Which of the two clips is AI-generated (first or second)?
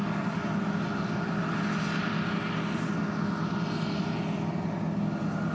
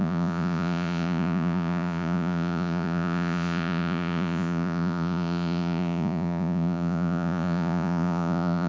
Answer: second